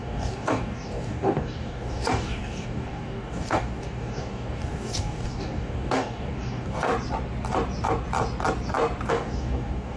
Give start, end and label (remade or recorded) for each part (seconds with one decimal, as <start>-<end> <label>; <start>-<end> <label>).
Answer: 0.0-6.9 remade; 6.9-9.1 recorded; 9.1-10.0 remade